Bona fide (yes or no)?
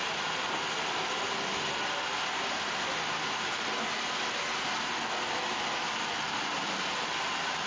yes